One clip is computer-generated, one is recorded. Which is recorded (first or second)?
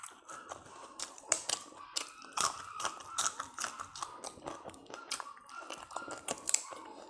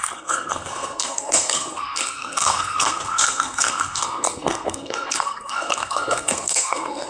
first